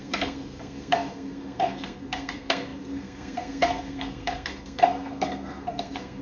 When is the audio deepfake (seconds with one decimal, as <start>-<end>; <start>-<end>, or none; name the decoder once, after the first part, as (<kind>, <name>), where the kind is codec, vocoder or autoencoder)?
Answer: 0.0-6.2 (codec, SNAC)